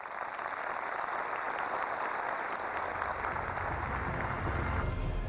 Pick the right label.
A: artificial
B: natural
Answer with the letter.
B